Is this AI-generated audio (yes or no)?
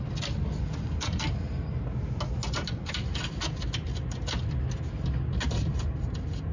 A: no